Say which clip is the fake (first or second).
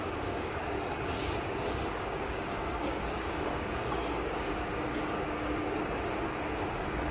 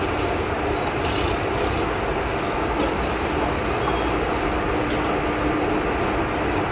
first